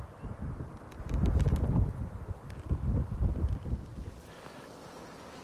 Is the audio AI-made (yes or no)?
no